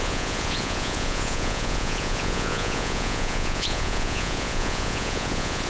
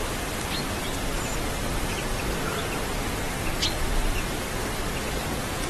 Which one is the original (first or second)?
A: second